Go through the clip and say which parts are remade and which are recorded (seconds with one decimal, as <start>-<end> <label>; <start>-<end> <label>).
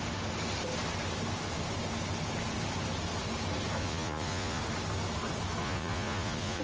0.0-3.8 recorded; 3.8-4.6 remade; 4.6-5.6 recorded; 5.6-6.6 remade